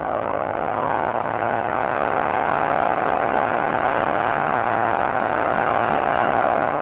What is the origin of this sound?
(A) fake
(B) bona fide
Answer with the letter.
A